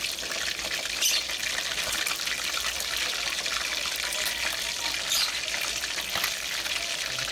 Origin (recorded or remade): recorded